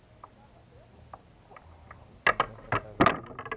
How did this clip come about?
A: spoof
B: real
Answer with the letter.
B